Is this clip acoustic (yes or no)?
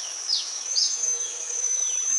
no